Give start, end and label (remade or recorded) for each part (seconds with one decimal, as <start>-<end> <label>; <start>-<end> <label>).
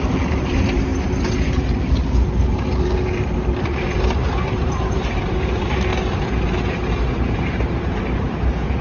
0.0-0.9 remade; 0.9-1.5 recorded; 1.5-5.9 remade; 5.9-7.1 recorded; 7.1-8.8 remade